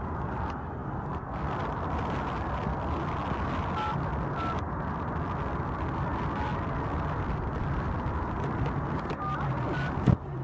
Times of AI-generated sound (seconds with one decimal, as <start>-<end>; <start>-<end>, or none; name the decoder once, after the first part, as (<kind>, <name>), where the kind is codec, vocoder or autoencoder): none

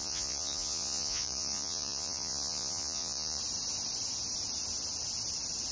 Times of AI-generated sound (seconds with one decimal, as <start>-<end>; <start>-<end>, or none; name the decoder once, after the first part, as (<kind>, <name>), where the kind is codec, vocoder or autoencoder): 0.0-3.4 (vocoder, Vocos)

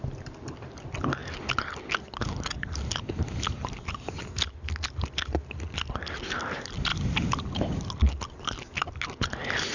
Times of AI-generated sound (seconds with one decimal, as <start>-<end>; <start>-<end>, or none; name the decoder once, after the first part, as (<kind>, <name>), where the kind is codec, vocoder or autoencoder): none

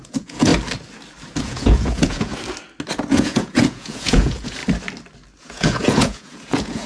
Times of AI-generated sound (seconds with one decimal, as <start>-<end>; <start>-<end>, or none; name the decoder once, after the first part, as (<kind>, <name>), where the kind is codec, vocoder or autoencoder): 0.0-0.5 (vocoder, Vocos); 1.4-2.3; 3.1-4.6; 5.4-6.9

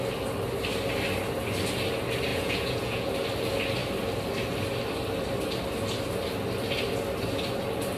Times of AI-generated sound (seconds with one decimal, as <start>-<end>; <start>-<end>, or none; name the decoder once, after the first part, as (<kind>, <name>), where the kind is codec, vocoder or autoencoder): 2.3-3.1 (vocoder, Vocos)

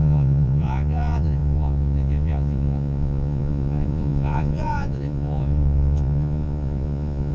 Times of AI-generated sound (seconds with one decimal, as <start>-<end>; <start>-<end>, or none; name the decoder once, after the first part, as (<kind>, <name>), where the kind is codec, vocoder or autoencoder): 0.0-7.3 (vocoder, Vocos)